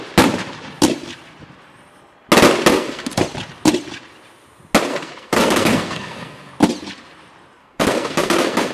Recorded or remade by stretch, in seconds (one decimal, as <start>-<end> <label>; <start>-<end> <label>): 0.0-2.7 recorded; 2.7-3.2 remade; 3.2-4.9 recorded; 4.9-6.5 remade; 6.5-7.6 recorded; 7.6-8.7 remade